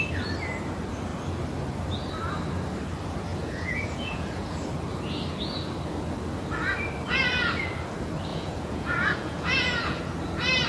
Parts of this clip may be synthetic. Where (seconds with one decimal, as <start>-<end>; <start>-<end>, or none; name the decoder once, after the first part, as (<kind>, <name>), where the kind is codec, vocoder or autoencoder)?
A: 3.3-4.6 (vocoder, Vocos); 8.3-10.0